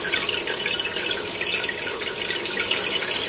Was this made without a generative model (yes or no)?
yes